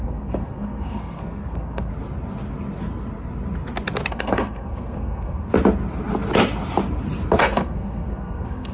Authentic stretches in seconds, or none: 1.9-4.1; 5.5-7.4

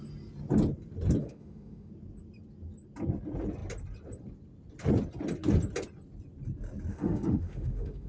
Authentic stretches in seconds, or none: 0.0-1.2; 1.9-6.9